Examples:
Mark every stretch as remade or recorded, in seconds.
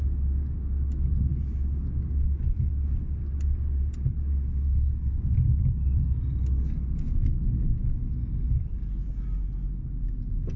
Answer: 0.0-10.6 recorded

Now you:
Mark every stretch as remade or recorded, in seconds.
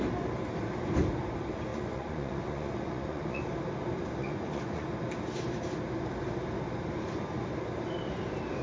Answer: 0.0-1.7 recorded; 1.7-3.4 remade; 3.4-4.2 recorded; 4.2-4.9 remade; 4.9-8.6 recorded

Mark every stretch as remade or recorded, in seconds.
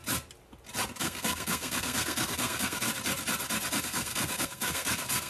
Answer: 0.0-1.0 recorded; 1.0-2.9 remade; 2.9-3.8 recorded; 3.8-5.3 remade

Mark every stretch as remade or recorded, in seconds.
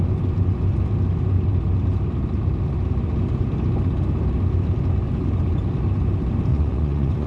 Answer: 0.0-6.5 recorded; 6.5-7.3 remade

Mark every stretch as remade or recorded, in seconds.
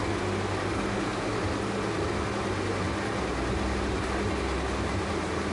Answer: 0.0-5.5 recorded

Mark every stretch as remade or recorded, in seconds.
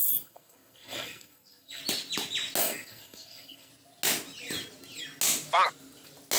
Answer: 0.0-1.8 remade; 1.8-2.6 recorded; 2.6-3.7 remade; 3.7-6.4 recorded